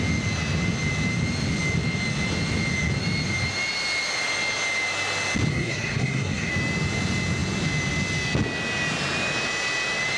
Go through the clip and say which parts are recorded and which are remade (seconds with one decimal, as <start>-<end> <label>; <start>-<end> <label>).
0.0-5.5 recorded; 5.5-6.5 remade; 6.5-10.2 recorded